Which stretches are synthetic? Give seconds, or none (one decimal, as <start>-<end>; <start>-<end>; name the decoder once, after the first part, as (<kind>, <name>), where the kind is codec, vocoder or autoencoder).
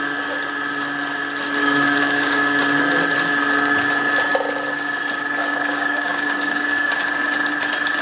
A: 1.6-2.6 (codec, DAC); 5.4-7.0